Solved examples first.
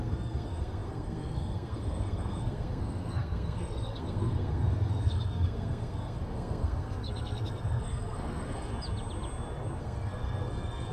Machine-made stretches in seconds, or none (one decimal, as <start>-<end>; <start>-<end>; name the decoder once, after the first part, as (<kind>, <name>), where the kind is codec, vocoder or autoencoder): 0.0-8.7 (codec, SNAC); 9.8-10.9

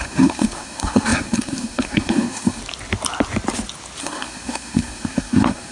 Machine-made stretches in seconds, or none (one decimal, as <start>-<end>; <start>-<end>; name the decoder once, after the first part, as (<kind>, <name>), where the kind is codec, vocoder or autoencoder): 0.0-2.6 (codec, SNAC); 4.0-5.7

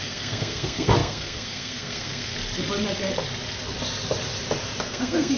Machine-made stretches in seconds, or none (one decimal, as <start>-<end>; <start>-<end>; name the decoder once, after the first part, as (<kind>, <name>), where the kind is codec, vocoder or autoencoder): 0.0-2.3 (codec, SNAC); 4.8-5.4

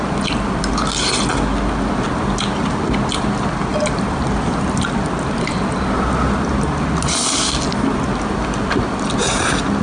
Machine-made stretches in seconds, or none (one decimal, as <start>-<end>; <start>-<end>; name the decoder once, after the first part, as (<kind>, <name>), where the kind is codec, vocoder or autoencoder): none

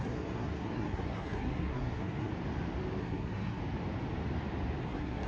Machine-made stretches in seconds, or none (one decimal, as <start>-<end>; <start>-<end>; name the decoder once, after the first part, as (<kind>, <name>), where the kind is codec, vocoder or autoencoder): 0.0-2.3 (codec, SNAC); 3.0-3.6; 4.8-5.3